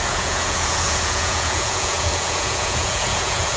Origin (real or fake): fake